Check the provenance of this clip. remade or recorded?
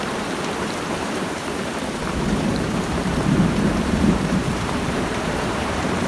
remade